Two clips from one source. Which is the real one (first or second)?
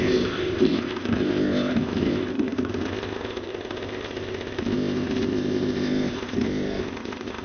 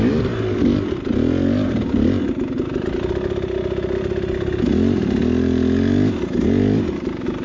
second